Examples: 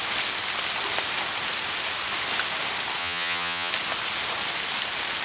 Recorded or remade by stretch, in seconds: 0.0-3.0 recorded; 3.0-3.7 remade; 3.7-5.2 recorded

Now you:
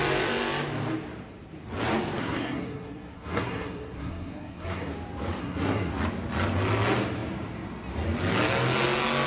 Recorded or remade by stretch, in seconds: 0.0-2.2 recorded; 2.2-4.9 remade; 4.9-5.4 recorded; 5.4-5.9 remade; 5.9-9.3 recorded

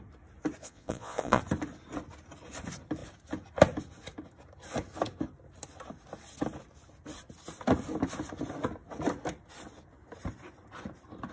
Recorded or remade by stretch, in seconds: 0.0-0.6 recorded; 0.6-1.4 remade; 1.4-11.3 recorded

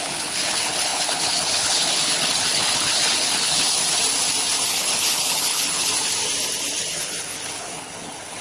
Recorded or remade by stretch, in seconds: 0.0-3.8 remade; 3.8-4.7 recorded; 4.7-5.9 remade; 5.9-6.8 recorded; 6.8-8.4 remade

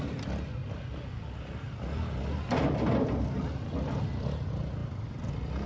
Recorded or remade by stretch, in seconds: 0.0-4.8 recorded; 4.8-5.3 remade; 5.3-5.7 recorded

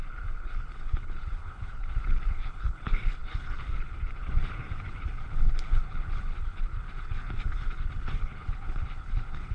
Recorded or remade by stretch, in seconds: 0.0-9.5 remade

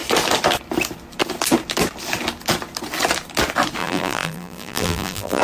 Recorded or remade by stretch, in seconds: 0.0-3.8 recorded; 3.8-5.4 remade

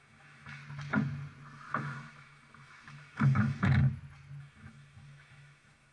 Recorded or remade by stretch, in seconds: 0.0-0.6 remade; 0.6-1.7 recorded; 1.7-3.8 remade; 3.8-4.4 recorded; 4.4-5.9 remade